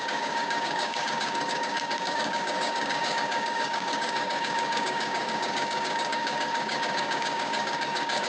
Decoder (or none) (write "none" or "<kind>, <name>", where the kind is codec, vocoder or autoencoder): codec, DAC